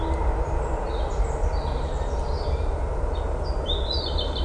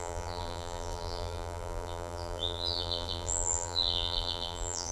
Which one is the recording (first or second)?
first